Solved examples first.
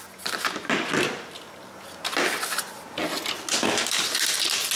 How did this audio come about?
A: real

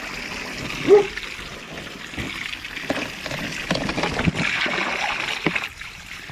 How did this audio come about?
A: real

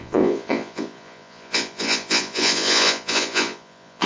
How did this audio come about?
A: fake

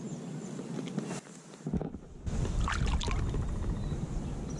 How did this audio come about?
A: real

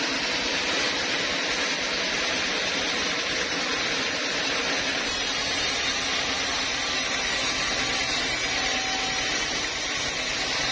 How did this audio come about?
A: real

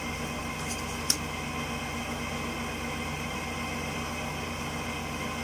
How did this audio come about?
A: real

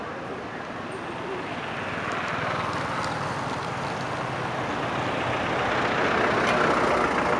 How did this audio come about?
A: real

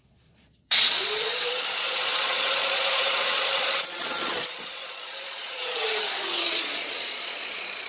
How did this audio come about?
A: fake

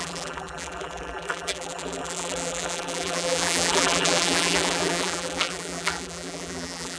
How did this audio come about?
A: fake